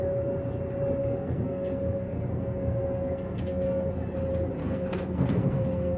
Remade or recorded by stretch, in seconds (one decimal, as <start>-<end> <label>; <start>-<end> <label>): 0.0-1.0 recorded; 1.0-3.9 remade; 3.9-4.6 recorded; 4.6-6.0 remade

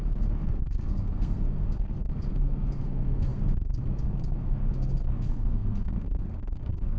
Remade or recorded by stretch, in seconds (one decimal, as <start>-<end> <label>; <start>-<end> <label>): 0.0-7.0 remade